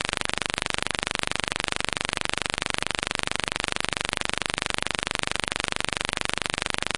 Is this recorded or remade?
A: recorded